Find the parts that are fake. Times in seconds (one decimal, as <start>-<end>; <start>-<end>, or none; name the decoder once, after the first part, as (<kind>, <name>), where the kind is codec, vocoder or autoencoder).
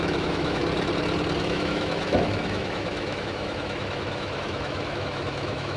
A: 0.0-0.6 (autoencoder, DAC-VAE); 1.4-5.8